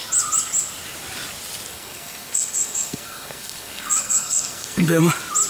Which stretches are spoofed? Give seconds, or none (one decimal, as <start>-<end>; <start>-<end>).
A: 1.7-5.0